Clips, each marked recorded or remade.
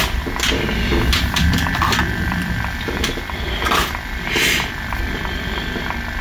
remade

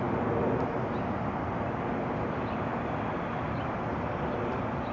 recorded